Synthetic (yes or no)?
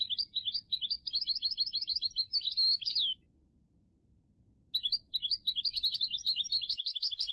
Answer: no